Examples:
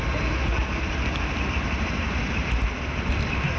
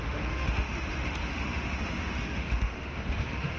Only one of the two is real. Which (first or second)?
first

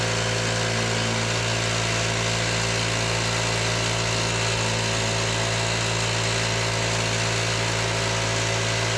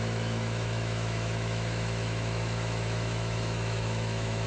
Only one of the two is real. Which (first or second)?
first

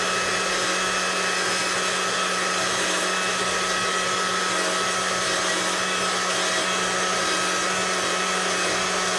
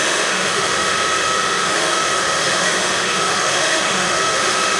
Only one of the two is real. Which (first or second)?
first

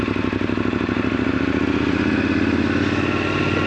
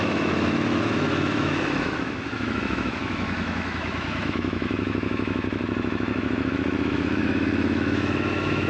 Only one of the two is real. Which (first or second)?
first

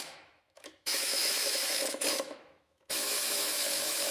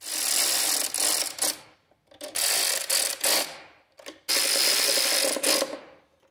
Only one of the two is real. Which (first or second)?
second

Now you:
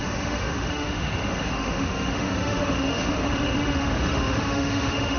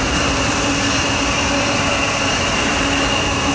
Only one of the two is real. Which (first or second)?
second